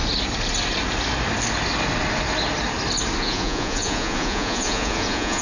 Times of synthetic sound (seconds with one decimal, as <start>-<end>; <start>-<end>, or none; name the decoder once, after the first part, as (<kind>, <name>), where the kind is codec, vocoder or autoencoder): 3.2-5.4 (vocoder, Vocos)